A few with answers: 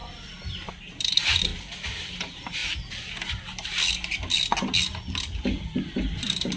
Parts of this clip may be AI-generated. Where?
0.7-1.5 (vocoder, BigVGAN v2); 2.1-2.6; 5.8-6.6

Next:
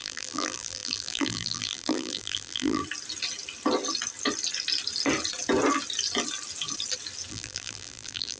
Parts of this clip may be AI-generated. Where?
0.0-2.8 (vocoder, BigVGAN v2); 7.3-8.4

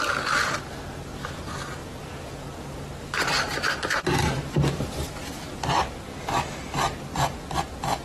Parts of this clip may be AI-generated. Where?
none

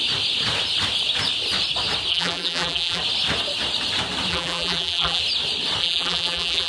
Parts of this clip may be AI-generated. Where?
2.1-3.0 (vocoder, BigVGAN v2); 4.3-5.2; 5.8-6.7

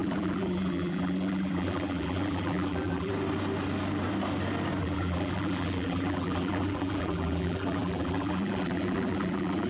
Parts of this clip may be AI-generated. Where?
0.0-3.1 (vocoder, BigVGAN v2); 4.8-9.7

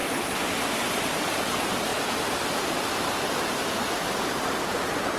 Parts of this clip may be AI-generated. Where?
1.9-4.1 (vocoder, BigVGAN v2)

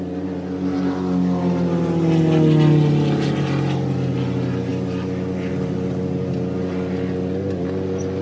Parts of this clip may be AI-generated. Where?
none

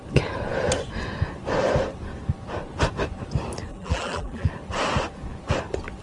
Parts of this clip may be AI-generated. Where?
3.7-4.5 (vocoder, BigVGAN v2)